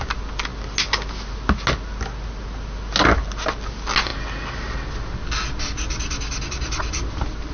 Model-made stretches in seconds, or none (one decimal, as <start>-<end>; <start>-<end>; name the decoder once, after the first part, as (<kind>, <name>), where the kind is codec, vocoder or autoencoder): none